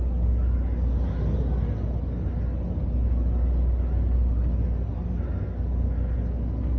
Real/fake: real